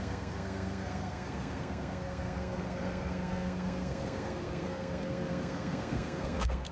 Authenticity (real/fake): fake